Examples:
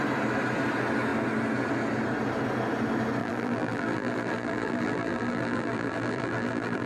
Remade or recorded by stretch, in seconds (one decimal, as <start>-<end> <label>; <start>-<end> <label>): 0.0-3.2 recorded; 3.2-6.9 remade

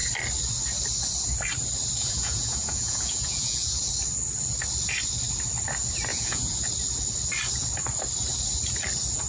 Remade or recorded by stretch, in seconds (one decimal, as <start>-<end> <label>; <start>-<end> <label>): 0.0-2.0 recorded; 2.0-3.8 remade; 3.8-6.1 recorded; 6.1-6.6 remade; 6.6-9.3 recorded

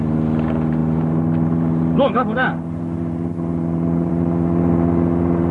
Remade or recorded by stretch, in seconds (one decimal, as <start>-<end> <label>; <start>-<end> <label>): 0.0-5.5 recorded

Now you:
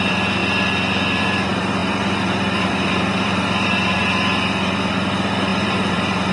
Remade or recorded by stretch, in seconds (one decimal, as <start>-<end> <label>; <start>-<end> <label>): 0.0-0.4 remade; 0.4-1.2 recorded; 1.2-4.0 remade; 4.0-4.9 recorded; 4.9-6.3 remade

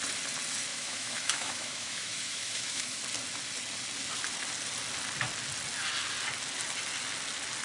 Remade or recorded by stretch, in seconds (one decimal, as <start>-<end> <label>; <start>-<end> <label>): 0.0-0.7 recorded; 0.7-3.0 remade; 3.0-7.6 recorded

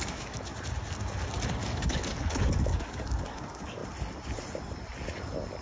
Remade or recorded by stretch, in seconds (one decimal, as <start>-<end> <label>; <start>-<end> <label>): 0.0-0.5 remade; 0.5-1.5 recorded; 1.5-3.8 remade; 3.8-5.6 recorded